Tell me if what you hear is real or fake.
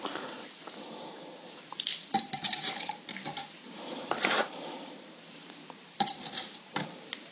fake